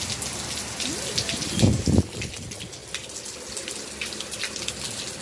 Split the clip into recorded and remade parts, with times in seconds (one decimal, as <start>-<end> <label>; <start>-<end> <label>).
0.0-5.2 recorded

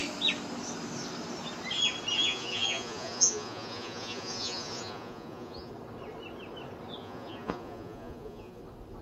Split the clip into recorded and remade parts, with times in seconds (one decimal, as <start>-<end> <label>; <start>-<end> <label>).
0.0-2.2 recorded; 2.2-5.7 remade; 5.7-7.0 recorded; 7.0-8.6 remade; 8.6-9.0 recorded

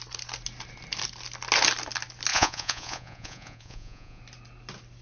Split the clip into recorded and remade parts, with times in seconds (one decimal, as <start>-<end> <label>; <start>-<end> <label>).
0.0-2.3 recorded; 2.3-4.2 remade; 4.2-5.0 recorded